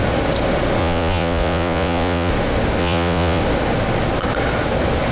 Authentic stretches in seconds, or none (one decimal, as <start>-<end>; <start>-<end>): 0.0-0.8; 2.3-2.8; 3.4-5.1